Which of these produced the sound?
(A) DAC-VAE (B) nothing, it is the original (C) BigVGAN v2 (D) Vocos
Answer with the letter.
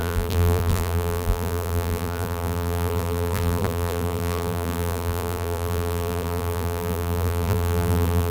C